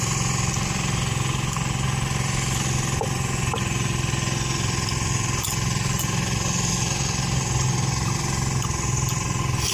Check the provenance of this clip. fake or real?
real